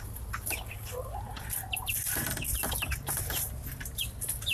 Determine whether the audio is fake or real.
real